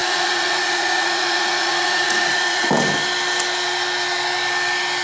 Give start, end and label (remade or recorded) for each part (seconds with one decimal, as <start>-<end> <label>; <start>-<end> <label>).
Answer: 0.0-2.7 remade; 2.7-5.0 recorded